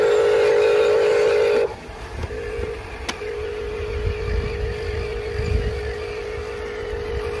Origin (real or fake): real